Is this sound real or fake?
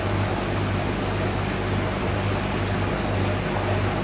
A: real